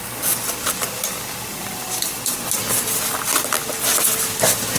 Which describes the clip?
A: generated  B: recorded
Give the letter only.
B